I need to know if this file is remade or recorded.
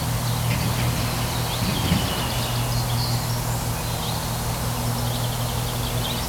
recorded